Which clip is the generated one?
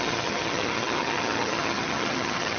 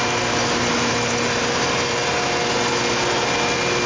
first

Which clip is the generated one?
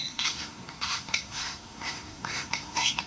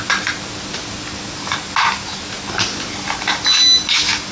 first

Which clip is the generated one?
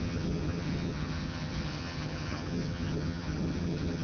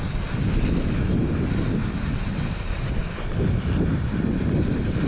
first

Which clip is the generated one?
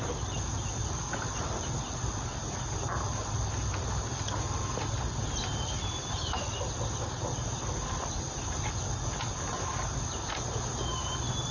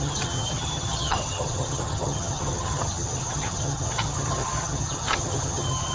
second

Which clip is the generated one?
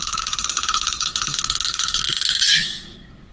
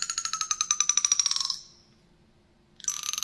first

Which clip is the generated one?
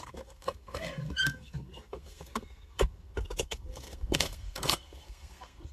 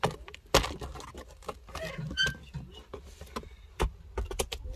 first